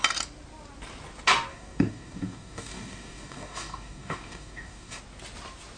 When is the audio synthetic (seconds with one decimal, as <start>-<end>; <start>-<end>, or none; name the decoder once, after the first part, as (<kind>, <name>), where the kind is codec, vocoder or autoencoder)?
1.5-5.0 (codec, DAC)